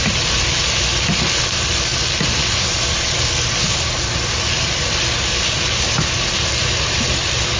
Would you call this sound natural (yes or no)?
yes